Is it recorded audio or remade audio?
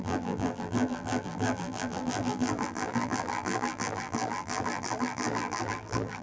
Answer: remade